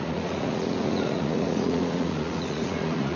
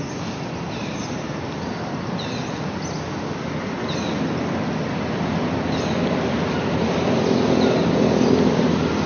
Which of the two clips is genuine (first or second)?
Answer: second